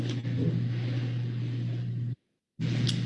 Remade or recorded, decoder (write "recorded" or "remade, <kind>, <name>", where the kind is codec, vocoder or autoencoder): recorded